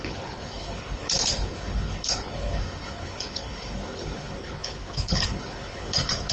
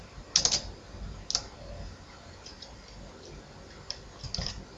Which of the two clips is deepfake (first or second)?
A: first